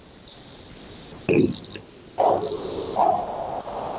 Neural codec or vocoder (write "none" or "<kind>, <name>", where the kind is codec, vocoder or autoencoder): none